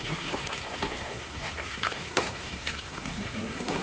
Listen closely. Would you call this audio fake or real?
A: fake